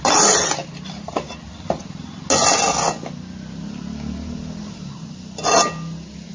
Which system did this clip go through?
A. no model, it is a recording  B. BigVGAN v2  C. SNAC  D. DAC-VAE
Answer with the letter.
A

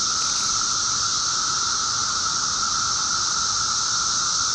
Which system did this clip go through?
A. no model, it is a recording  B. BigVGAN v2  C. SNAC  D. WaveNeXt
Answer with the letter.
A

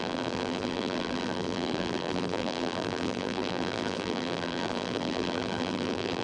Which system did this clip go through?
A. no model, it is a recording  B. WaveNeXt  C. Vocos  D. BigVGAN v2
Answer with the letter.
D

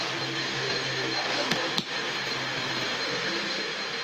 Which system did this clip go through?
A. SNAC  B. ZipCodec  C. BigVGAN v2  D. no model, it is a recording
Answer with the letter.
C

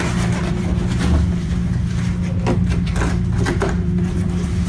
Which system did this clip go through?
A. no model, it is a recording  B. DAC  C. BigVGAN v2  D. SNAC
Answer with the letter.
A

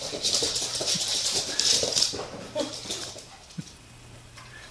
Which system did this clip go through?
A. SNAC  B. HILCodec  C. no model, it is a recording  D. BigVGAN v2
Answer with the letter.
D